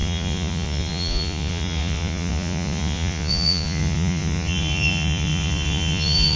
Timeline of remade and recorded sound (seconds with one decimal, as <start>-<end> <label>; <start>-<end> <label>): 0.0-6.4 remade